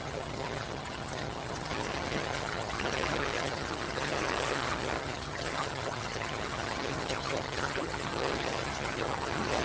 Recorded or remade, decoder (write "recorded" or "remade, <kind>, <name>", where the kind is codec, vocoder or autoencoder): remade, vocoder, HiFi-GAN